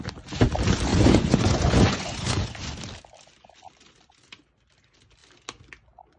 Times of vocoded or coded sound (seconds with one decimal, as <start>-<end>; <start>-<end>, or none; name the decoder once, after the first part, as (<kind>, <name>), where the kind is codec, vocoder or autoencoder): 0.9-2.8 (vocoder, Vocos)